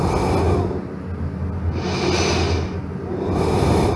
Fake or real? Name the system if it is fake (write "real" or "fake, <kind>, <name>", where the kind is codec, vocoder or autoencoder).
real